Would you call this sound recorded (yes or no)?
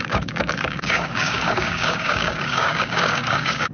no